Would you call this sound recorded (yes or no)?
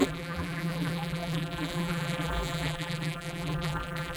no